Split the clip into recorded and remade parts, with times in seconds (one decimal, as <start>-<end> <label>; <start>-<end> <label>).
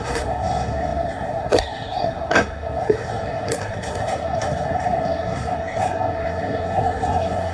0.0-7.5 remade